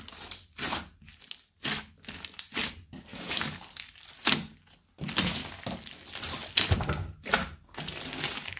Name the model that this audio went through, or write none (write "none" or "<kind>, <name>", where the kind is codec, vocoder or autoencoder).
none